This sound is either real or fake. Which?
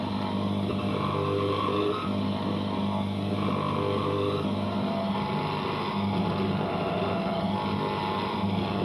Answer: real